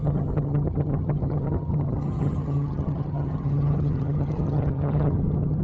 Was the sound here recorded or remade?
remade